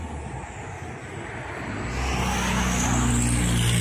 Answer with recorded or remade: recorded